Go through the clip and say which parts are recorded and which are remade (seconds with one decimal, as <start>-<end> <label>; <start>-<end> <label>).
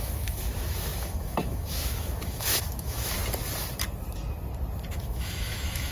0.0-3.2 remade; 3.2-4.9 recorded; 4.9-5.9 remade